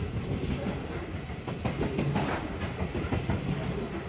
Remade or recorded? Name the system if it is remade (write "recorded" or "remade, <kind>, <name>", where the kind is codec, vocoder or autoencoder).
recorded